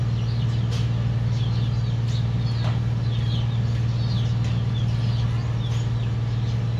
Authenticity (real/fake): real